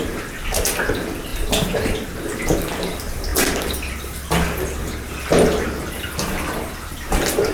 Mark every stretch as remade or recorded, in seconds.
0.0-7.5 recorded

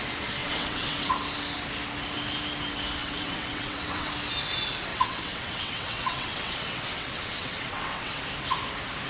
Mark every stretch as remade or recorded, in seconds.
0.0-0.4 recorded; 0.4-1.1 remade; 1.1-3.0 recorded; 3.0-4.1 remade; 4.1-4.9 recorded; 4.9-8.2 remade; 8.2-9.1 recorded